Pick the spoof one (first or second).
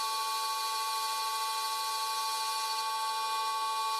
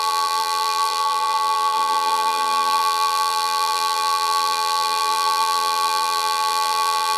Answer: second